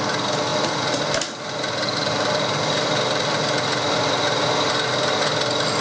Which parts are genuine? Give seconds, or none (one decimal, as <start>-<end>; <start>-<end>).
0.0-5.8